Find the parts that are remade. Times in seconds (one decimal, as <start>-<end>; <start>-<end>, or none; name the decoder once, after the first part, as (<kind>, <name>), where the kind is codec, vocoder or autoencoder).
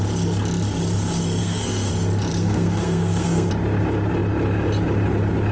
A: 1.4-1.9 (codec, SNAC); 2.3-3.5